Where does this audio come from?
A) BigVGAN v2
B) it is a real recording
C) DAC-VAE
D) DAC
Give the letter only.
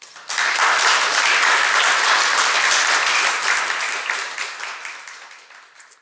B